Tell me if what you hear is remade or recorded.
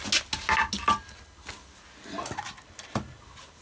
recorded